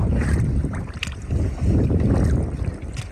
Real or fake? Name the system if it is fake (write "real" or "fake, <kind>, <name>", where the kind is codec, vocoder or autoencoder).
real